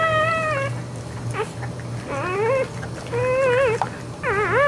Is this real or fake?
real